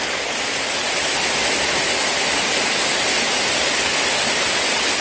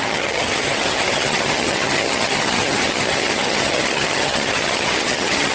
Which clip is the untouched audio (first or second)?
first